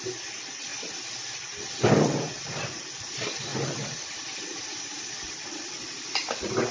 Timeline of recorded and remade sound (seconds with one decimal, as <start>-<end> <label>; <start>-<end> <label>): 0.0-6.7 recorded